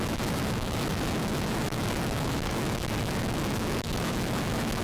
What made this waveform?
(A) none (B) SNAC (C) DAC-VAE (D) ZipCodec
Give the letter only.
C